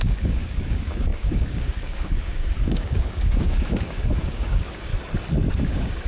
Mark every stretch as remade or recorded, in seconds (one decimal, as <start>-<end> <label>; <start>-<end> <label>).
0.0-4.9 remade; 4.9-5.6 recorded; 5.6-6.1 remade